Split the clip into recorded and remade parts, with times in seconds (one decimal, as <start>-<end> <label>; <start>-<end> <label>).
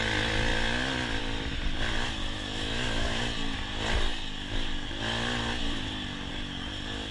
0.0-2.2 recorded; 2.2-3.2 remade; 3.2-7.1 recorded